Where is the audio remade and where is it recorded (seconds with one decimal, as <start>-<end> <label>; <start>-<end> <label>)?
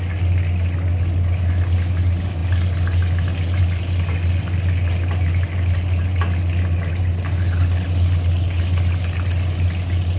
0.0-10.2 recorded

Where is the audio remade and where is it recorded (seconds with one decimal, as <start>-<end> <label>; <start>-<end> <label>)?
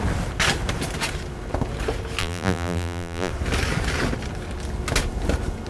0.0-2.2 recorded; 2.2-3.3 remade; 3.3-5.7 recorded